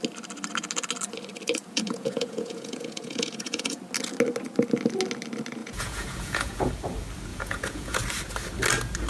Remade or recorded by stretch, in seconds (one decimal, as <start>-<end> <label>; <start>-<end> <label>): 0.0-1.6 recorded; 1.6-3.8 remade; 3.8-5.6 recorded; 5.6-6.7 remade; 6.7-7.3 recorded; 7.3-8.0 remade; 8.0-9.1 recorded